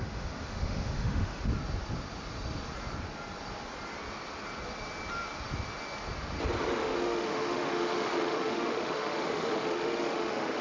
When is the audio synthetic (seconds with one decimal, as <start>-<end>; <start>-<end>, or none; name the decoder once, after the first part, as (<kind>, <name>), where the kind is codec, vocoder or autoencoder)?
0.0-1.5 (autoencoder, DAC-VAE); 6.7-10.6